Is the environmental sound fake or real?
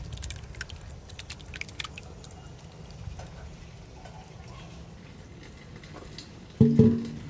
real